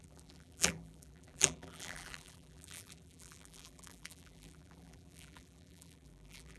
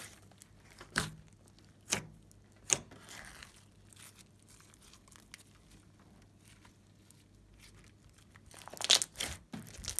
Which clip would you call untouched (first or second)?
second